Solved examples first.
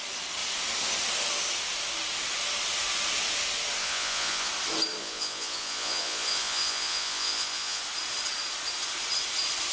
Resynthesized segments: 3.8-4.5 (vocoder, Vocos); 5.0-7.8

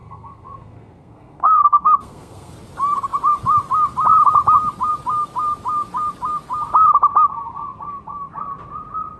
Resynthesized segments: 0.0-2.5 (codec, SNAC)

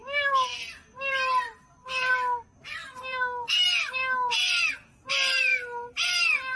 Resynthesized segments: none

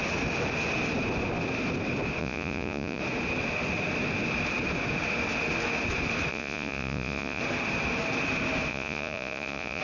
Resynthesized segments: 2.2-3.0 (vocoder, Vocos); 6.3-7.4; 8.7-9.8

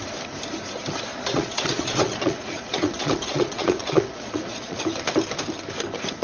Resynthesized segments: 1.1-4.8 (vocoder, Vocos)

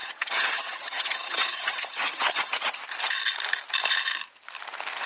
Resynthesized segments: 0.0-2.8 (vocoder, HiFi-GAN)

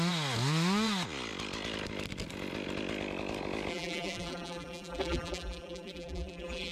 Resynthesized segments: 3.7-6.7 (vocoder, BigVGAN v2)

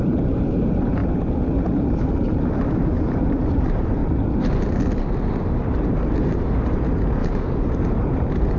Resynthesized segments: 0.0-1.0 (vocoder, BigVGAN v2); 2.0-4.0; 5.5-8.6